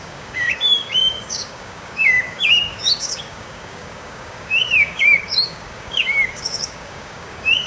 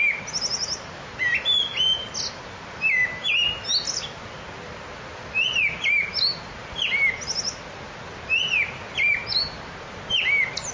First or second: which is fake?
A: first